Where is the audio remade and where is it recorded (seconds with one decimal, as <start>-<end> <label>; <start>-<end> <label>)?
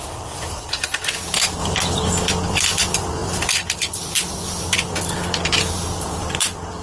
0.0-6.8 recorded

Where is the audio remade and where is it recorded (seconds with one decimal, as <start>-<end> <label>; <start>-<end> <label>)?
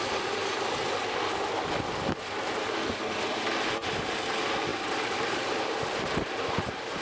0.0-4.7 recorded; 4.7-7.0 remade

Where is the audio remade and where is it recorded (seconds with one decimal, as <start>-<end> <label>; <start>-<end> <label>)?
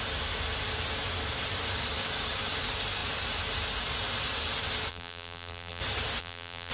0.0-4.9 recorded; 4.9-5.8 remade; 5.8-6.2 recorded; 6.2-6.7 remade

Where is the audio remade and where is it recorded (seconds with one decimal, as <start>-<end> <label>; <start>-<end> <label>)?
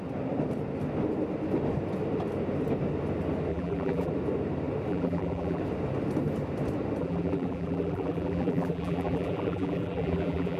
0.0-3.5 recorded; 3.5-4.1 remade; 4.1-4.9 recorded; 4.9-5.6 remade; 5.6-7.0 recorded; 7.0-10.6 remade